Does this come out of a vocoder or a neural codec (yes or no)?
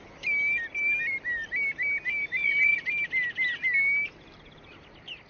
no